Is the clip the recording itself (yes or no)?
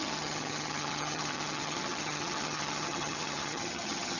no